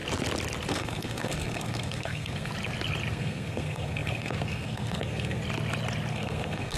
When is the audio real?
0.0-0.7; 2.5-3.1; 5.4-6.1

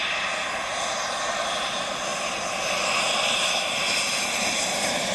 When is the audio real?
0.0-5.1

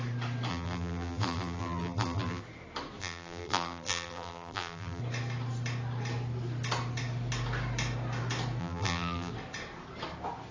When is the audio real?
0.0-0.5; 2.4-3.0; 5.0-8.6; 9.3-10.5

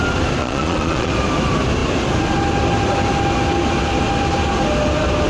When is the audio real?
0.0-0.4; 1.1-5.3

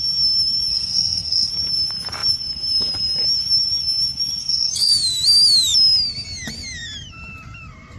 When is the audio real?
0.0-0.7; 1.5-4.4; 4.9-8.0